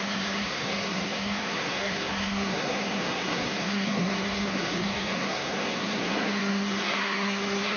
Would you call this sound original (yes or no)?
no